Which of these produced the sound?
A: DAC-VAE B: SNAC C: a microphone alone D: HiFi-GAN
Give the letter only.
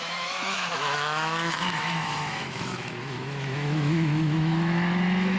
A